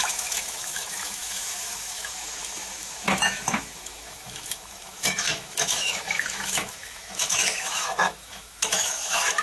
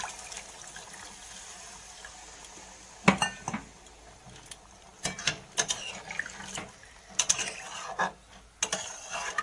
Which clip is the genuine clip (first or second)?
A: second